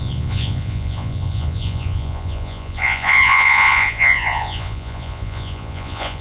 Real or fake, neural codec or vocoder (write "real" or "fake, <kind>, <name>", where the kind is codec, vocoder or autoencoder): fake, vocoder, Vocos